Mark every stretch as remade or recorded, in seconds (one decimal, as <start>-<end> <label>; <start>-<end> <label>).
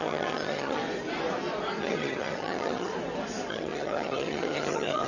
0.0-0.8 remade; 0.8-1.8 recorded; 1.8-2.9 remade; 2.9-3.5 recorded; 3.5-5.1 remade